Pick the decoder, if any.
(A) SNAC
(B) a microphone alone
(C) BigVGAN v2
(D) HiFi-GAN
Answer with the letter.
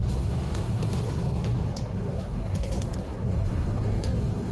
A